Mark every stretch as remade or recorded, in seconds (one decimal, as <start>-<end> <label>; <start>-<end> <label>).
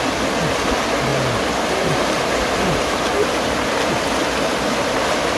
0.0-1.1 recorded; 1.1-3.5 remade; 3.5-5.4 recorded